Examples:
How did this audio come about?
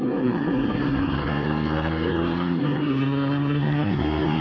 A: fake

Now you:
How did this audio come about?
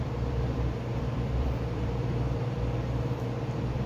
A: fake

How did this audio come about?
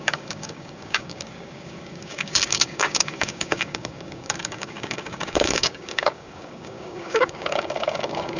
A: fake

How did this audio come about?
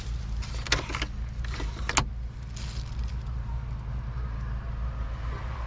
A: real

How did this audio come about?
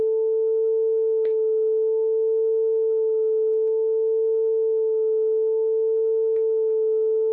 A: fake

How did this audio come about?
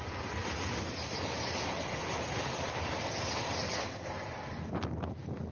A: real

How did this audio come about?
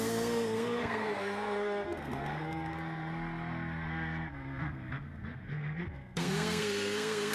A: fake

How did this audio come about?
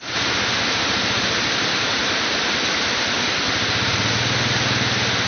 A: real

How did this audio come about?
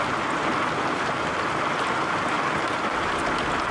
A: real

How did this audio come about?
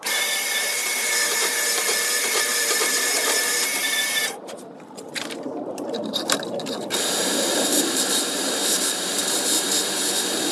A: fake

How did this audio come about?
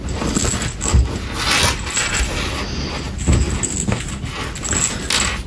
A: real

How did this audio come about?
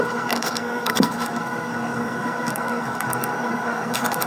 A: fake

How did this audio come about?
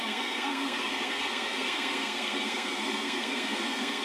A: fake